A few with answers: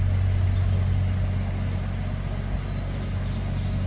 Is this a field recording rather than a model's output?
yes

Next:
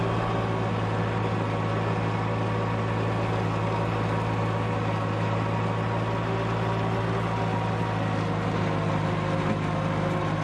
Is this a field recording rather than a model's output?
yes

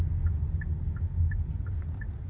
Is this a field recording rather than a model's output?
yes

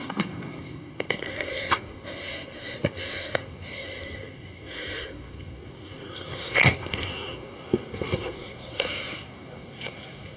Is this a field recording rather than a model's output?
no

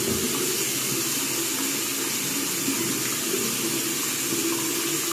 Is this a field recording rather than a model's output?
yes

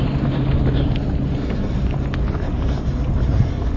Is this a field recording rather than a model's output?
yes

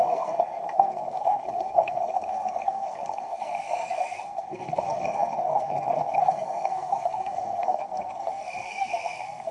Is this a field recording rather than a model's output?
no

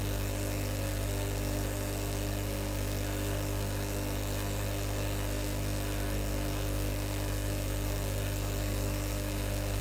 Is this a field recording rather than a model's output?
no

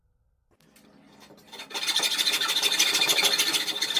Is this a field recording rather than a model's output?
yes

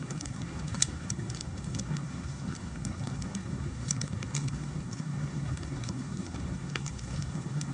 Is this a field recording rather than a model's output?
no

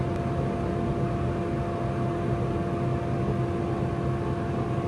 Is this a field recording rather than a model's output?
yes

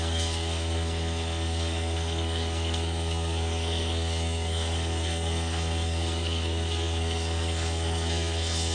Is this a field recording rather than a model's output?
no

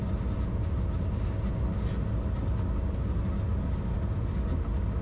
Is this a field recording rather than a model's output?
yes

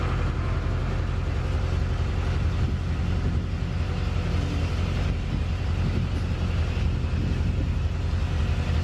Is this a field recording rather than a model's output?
yes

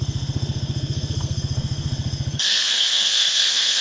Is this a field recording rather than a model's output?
no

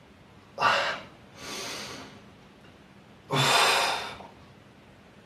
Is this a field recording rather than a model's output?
yes